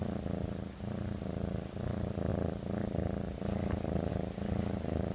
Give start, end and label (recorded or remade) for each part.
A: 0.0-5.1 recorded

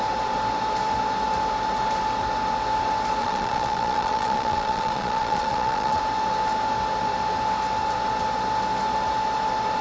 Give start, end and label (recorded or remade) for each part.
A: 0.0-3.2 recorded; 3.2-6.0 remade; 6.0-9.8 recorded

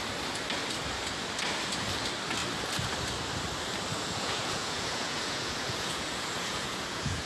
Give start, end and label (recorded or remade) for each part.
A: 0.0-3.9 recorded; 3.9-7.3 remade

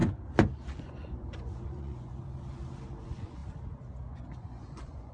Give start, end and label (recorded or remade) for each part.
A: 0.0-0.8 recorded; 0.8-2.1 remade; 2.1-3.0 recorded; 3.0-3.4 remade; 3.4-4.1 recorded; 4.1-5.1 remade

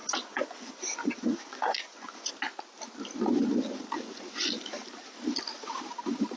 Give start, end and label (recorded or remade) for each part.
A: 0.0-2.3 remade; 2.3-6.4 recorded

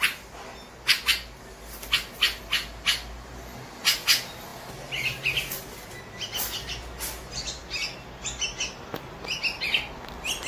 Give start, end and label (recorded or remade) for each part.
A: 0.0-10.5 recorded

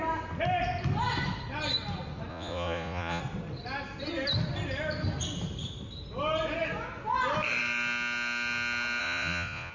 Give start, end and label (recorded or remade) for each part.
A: 0.0-2.3 recorded; 2.3-3.2 remade; 3.2-9.0 recorded; 9.0-9.7 remade

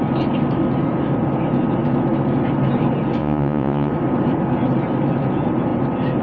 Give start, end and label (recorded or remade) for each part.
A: 0.0-3.2 recorded; 3.2-3.9 remade; 3.9-6.2 recorded